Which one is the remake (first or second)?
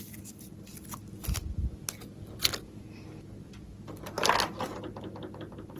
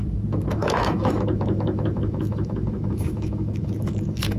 second